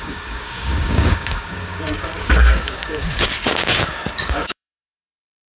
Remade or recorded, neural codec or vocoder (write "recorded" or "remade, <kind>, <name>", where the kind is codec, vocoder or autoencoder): remade, codec, DAC